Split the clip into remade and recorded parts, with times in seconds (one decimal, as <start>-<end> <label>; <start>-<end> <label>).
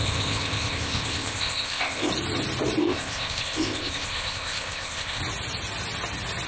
0.0-2.1 remade; 2.1-2.8 recorded; 2.8-5.2 remade; 5.2-6.5 recorded